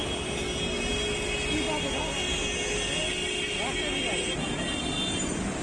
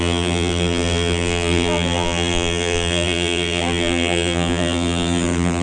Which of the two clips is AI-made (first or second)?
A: second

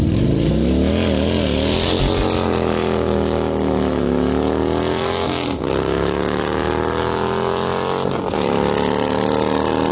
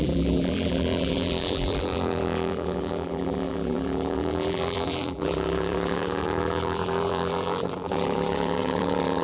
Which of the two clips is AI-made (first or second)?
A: second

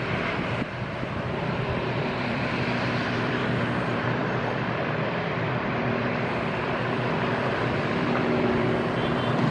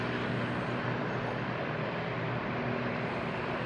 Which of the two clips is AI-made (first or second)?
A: first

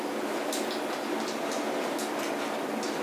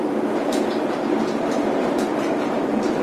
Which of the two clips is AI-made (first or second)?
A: second